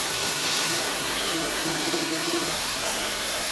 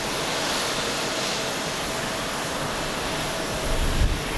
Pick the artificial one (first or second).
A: first